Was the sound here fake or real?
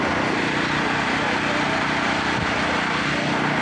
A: real